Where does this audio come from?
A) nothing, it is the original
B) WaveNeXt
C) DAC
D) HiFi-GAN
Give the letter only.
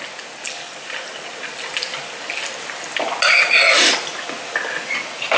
A